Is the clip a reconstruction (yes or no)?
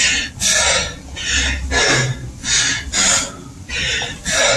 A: no